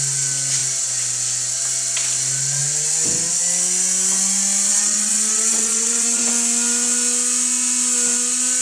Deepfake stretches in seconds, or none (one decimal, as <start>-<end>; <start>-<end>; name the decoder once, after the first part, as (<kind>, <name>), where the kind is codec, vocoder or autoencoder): 4.7-6.3 (vocoder, WaveNeXt)